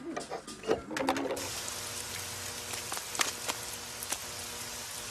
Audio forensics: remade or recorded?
recorded